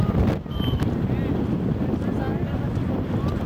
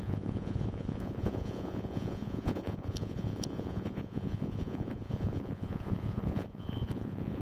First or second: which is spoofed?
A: second